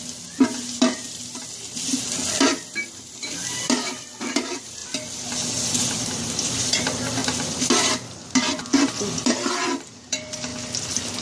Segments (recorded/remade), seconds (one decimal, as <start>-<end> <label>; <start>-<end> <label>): 0.0-4.8 remade; 4.8-5.8 recorded; 5.8-7.2 remade; 7.2-8.9 recorded; 8.9-10.5 remade; 10.5-11.2 recorded